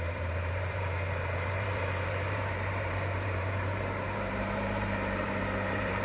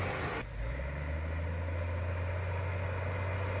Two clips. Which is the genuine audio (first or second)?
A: second